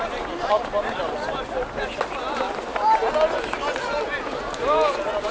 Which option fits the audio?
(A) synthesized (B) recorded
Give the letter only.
B